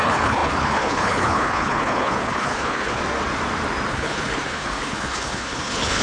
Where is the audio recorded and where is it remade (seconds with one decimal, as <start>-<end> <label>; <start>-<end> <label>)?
0.0-3.0 remade; 3.0-3.9 recorded; 3.9-6.0 remade